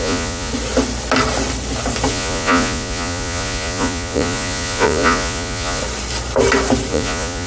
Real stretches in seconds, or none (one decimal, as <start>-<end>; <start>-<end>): 0.5-2.1; 5.8-6.9